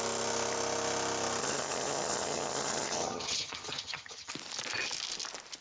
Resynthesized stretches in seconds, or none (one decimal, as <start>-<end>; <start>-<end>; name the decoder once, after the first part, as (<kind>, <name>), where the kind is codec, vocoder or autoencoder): 1.4-4.3 (vocoder, HiFi-GAN)